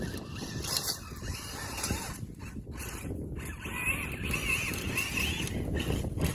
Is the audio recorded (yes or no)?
yes